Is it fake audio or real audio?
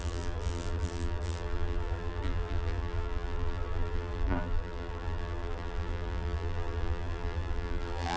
fake